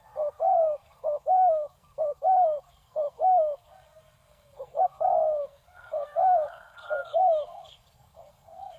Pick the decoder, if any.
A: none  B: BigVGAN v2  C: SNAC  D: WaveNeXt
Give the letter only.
C